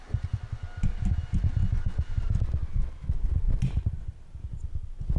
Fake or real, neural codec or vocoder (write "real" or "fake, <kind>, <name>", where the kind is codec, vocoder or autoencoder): real